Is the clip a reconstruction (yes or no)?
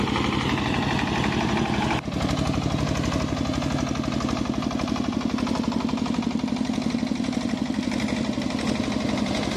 no